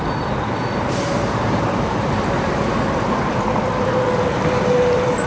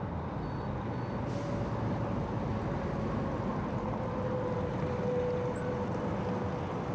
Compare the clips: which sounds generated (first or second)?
first